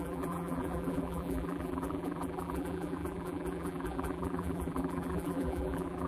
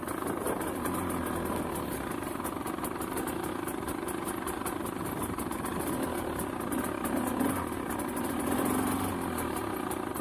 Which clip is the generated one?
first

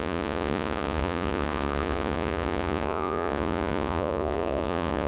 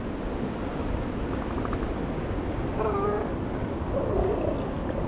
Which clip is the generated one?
first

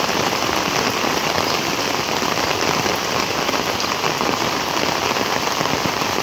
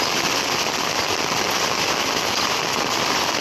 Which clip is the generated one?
first